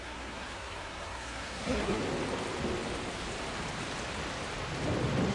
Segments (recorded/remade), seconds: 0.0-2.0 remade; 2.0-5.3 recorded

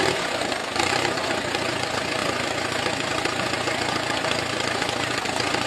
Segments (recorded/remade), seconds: 0.0-5.7 remade

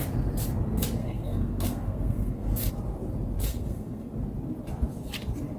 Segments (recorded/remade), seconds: 0.0-1.0 recorded; 1.0-2.7 remade; 2.7-3.5 recorded; 3.5-4.1 remade; 4.1-5.6 recorded

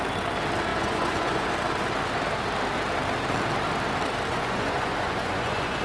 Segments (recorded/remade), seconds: 0.0-0.7 recorded; 0.7-1.5 remade; 1.5-4.3 recorded; 4.3-5.8 remade

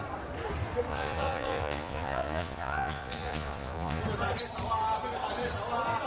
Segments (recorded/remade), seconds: 0.0-0.9 recorded; 0.9-4.0 remade; 4.0-6.1 recorded

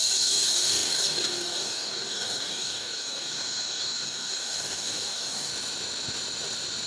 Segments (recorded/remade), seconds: 0.0-5.5 remade; 5.5-6.9 recorded